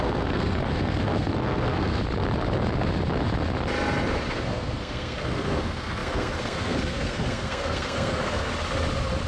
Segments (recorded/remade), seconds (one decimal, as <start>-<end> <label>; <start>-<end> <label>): 0.0-2.0 remade; 2.0-4.3 recorded; 4.3-8.5 remade; 8.5-9.3 recorded